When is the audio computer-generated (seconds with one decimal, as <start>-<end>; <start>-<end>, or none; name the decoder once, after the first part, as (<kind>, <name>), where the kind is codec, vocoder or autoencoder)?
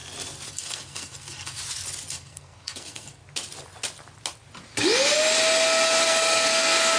0.5-1.6 (codec, SNAC); 2.1-3.2; 6.0-7.0